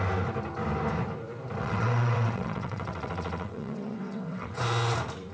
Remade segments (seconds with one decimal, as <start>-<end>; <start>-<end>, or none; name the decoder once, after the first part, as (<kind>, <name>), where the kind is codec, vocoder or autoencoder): 1.6-4.6 (vocoder, WaveNeXt)